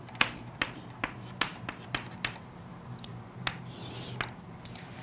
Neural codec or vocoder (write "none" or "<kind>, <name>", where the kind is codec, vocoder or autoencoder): none